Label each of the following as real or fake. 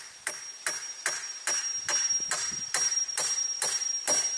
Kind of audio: real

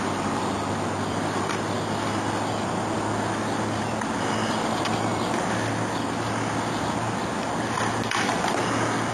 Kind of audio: real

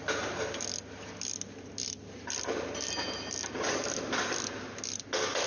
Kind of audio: real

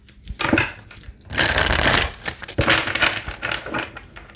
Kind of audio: real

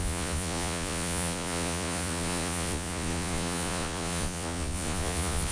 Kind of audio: fake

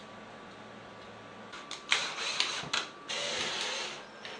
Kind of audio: real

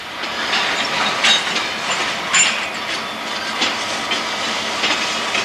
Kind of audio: real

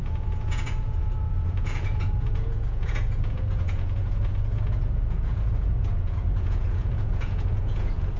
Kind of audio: fake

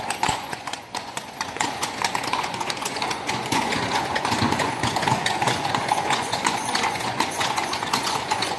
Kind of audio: fake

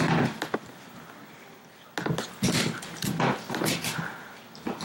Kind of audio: real